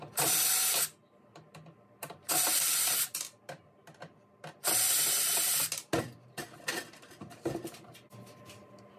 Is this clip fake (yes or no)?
no